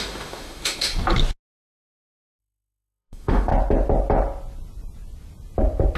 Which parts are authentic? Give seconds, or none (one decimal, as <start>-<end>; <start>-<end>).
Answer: 0.9-2.4; 3.5-6.0

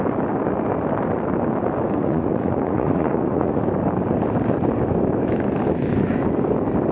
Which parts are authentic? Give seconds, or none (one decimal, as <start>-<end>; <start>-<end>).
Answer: 0.0-2.0; 3.6-6.9

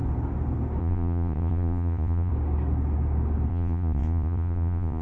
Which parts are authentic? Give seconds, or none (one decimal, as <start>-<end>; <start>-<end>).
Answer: 0.0-0.8; 2.3-3.5

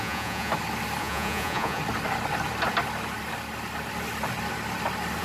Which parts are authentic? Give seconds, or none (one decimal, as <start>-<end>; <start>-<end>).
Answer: 0.5-1.0; 1.8-5.2

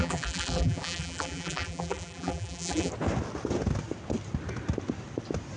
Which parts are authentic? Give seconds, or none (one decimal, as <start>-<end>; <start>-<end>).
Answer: 2.9-5.6

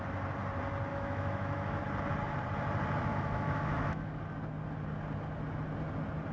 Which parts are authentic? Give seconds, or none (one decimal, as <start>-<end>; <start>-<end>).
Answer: 0.0-0.9; 1.8-3.1; 4.2-6.3

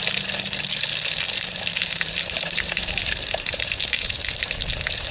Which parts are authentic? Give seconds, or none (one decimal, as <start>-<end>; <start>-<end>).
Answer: 0.0-1.8

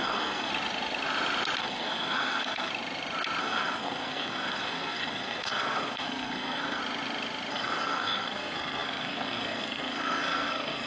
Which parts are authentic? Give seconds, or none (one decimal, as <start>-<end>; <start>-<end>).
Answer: 0.5-1.6; 2.7-3.4; 6.8-7.5